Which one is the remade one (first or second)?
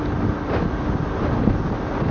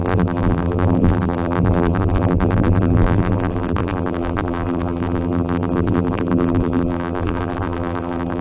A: second